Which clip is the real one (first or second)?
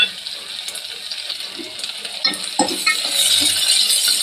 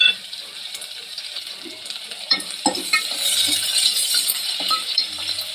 first